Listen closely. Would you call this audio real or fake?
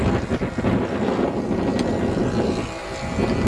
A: real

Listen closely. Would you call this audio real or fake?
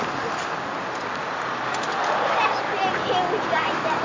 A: real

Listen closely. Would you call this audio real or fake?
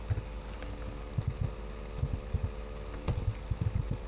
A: real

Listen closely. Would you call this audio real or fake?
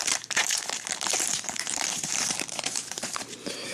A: fake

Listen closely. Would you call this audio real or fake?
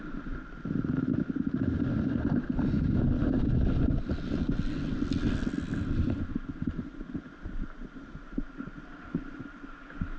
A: real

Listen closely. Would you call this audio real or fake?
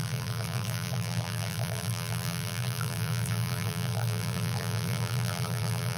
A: fake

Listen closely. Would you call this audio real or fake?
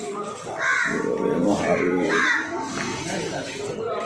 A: real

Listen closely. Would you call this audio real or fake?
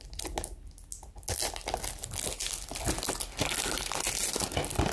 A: real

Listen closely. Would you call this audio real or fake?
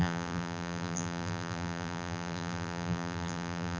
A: fake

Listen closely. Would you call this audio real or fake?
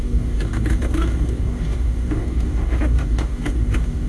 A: fake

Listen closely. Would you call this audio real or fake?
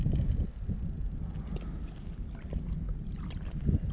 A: real